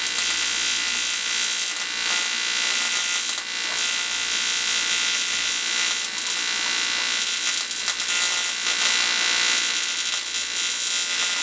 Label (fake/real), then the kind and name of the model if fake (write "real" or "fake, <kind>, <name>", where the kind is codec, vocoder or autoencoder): real